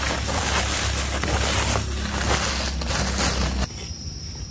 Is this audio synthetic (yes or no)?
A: no